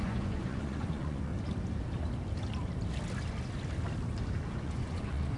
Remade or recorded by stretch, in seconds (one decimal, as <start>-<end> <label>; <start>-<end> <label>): 0.0-1.3 remade; 1.3-4.5 recorded; 4.5-5.4 remade